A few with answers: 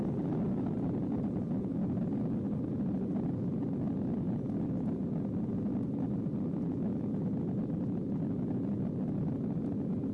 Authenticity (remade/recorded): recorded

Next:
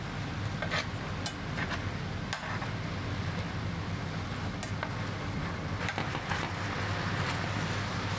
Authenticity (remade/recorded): recorded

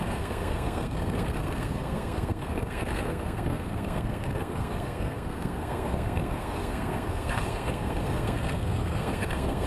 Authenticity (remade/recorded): remade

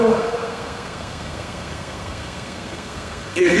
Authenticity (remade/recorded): remade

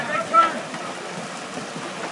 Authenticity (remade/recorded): recorded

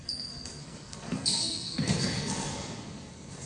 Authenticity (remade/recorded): remade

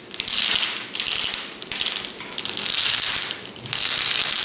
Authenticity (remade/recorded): recorded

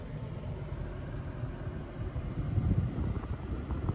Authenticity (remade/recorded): recorded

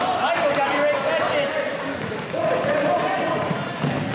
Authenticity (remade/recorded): recorded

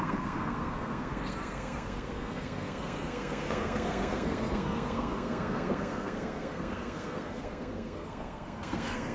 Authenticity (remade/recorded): remade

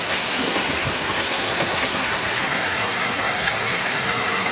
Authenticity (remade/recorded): remade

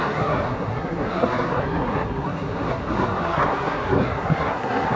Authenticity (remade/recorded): remade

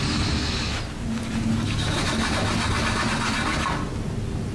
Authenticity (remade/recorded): recorded